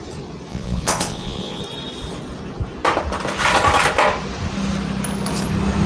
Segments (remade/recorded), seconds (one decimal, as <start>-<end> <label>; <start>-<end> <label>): 0.0-0.5 recorded; 0.5-1.6 remade; 1.6-5.9 recorded